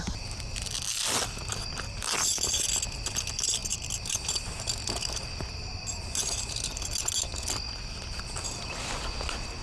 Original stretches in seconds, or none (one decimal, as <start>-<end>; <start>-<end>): 0.0-9.6